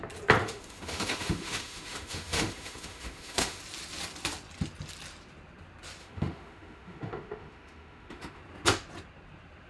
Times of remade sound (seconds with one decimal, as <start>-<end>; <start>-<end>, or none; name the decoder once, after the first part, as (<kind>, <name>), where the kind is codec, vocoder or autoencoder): 0.4-3.6 (autoencoder, DAC-VAE); 6.0-8.4

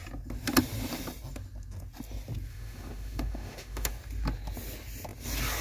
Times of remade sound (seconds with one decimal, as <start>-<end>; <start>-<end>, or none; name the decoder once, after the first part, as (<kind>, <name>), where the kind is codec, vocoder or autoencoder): 2.5-3.9 (autoencoder, DAC-VAE)

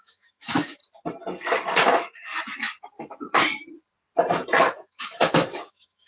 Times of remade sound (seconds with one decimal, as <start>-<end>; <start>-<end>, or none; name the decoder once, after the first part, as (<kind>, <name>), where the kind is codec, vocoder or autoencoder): 0.0-0.8 (autoencoder, DAC-VAE); 1.9-2.3; 4.6-6.1

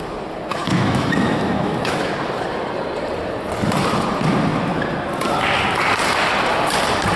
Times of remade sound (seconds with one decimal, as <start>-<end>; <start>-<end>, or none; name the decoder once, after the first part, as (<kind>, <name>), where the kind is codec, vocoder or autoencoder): 0.5-2.1 (autoencoder, DAC-VAE)

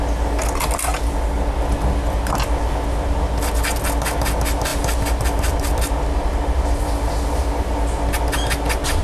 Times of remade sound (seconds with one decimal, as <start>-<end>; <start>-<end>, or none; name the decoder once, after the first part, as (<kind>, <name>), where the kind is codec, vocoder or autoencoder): none

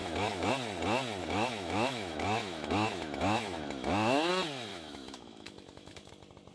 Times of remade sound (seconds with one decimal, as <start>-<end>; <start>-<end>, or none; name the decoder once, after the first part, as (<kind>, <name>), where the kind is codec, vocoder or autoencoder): 0.0-0.5 (autoencoder, DAC-VAE); 1.2-4.3; 4.7-6.1

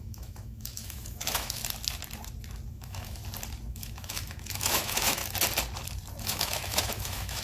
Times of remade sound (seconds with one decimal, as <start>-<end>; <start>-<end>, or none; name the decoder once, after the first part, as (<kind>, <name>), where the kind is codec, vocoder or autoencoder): 0.0-1.6 (autoencoder, DAC-VAE); 2.7-3.2; 3.7-5.2; 6.2-7.4

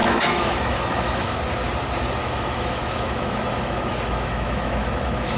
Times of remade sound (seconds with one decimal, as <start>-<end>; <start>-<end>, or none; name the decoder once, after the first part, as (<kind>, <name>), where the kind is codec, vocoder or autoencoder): 0.0-1.4 (autoencoder, DAC-VAE); 2.2-5.4